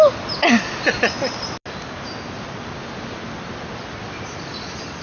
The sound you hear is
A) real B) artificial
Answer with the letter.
A